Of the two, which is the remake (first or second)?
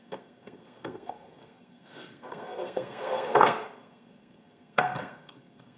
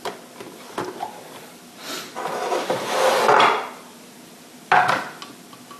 first